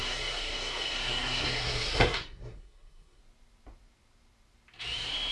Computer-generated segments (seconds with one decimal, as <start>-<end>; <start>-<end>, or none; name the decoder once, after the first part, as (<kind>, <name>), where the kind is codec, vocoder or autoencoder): 0.0-3.2 (codec, SNAC)